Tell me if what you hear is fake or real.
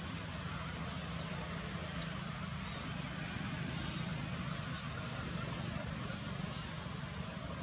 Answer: real